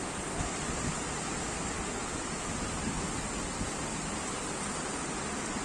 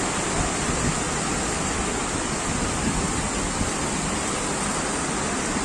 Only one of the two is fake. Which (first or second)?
second